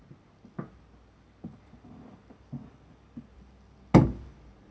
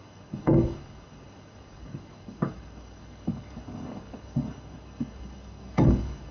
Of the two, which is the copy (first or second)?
second